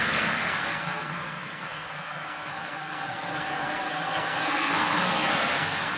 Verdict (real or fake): fake